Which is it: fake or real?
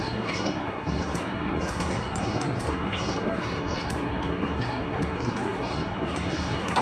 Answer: fake